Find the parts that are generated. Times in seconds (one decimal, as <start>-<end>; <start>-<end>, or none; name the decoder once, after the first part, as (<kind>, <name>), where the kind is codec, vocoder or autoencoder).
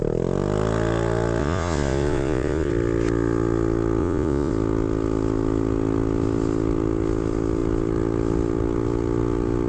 1.4-2.7 (vocoder, Vocos); 4.0-4.5